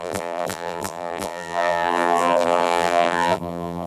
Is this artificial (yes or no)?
yes